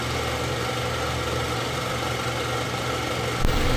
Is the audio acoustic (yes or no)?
yes